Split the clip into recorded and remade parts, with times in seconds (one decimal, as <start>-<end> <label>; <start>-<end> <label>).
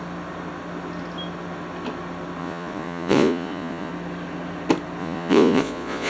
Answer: 0.0-2.4 recorded; 2.4-3.9 remade; 3.9-5.0 recorded; 5.0-6.1 remade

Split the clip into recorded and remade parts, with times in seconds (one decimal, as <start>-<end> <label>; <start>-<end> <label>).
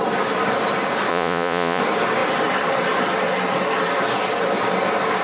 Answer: 0.0-1.1 recorded; 1.1-1.8 remade; 1.8-5.2 recorded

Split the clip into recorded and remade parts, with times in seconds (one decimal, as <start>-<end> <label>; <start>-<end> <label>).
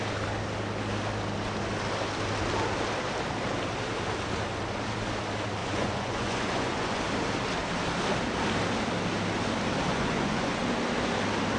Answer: 0.0-5.6 recorded; 5.6-7.0 remade; 7.0-9.9 recorded; 9.9-10.6 remade; 10.6-11.6 recorded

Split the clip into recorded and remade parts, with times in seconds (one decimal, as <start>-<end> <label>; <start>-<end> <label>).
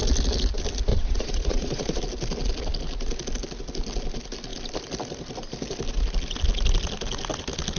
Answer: 0.0-0.9 recorded; 0.9-2.0 remade; 2.0-7.8 recorded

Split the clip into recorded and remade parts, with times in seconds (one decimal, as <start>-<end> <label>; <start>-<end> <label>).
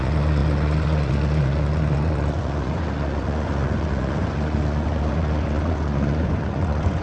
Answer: 0.0-7.0 remade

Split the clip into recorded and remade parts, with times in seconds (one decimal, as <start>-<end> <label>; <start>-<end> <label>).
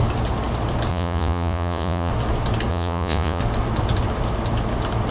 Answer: 0.0-0.9 recorded; 0.9-2.1 remade; 2.1-2.7 recorded; 2.7-3.4 remade; 3.4-5.1 recorded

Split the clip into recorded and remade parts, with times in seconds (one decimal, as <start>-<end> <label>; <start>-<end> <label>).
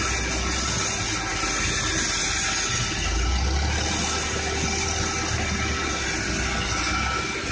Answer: 0.0-7.5 recorded